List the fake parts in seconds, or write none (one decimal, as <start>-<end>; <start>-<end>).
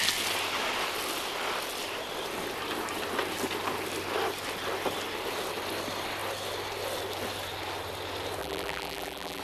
8.4-9.4